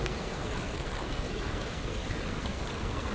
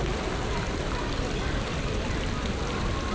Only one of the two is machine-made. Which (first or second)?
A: first